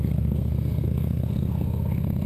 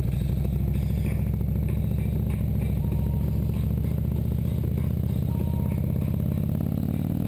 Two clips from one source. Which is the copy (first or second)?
first